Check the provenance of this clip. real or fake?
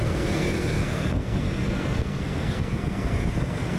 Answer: fake